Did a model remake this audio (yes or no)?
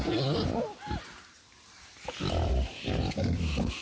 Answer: no